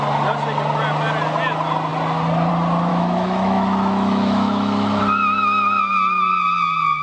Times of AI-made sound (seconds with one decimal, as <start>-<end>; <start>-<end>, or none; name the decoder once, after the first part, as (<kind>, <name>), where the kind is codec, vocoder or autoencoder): 2.9-5.0 (autoencoder, DAC-VAE)